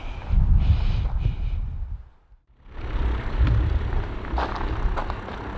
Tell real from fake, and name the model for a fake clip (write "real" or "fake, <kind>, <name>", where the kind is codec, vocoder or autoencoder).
real